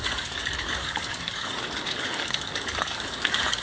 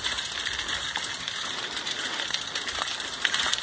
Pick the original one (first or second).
second